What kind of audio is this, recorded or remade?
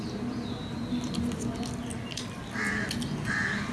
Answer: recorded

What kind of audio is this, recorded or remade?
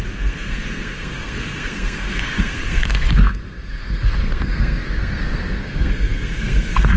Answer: remade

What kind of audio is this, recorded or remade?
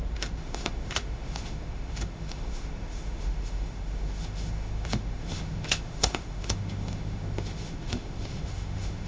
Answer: remade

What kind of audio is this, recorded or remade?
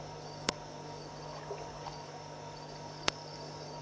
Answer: remade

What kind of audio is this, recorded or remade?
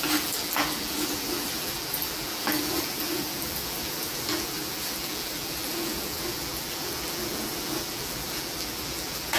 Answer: remade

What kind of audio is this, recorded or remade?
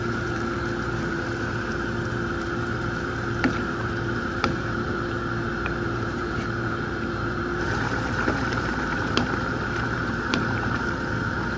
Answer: remade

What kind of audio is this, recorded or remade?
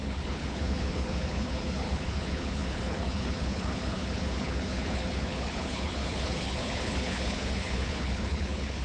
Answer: remade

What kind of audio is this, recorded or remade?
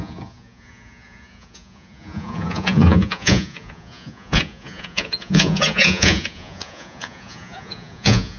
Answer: remade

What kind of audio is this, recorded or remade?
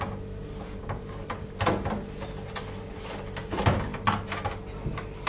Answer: recorded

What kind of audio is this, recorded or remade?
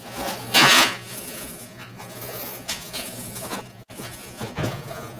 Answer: remade